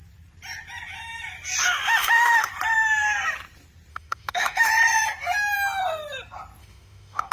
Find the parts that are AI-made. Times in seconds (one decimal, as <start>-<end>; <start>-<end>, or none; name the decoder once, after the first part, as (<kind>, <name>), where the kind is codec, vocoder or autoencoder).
1.6-2.5 (autoencoder, DAC-VAE); 3.9-4.7; 6.6-7.3